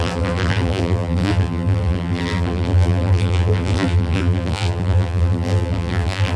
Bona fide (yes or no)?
no